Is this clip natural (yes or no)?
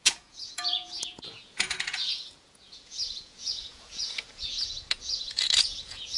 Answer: no